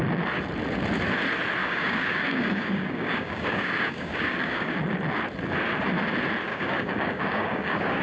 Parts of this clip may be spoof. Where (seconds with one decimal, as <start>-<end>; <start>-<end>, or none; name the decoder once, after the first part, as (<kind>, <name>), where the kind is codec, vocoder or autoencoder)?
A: 1.6-4.7 (codec, DAC); 6.5-8.0